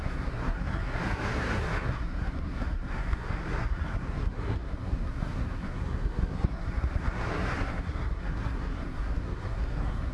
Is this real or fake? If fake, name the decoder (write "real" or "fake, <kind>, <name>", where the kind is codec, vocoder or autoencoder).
fake, codec, SNAC